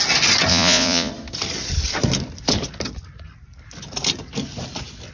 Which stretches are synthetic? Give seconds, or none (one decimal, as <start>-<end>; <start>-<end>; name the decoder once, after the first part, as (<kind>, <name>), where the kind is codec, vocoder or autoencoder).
0.5-1.1 (vocoder, Vocos)